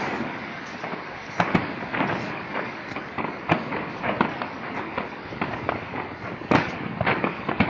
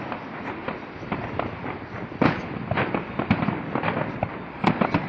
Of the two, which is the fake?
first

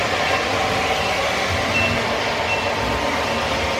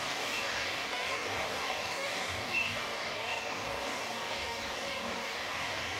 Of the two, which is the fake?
second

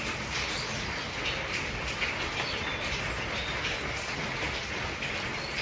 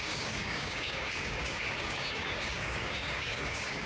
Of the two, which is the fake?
second